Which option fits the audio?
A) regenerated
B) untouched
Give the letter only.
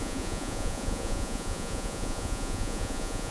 A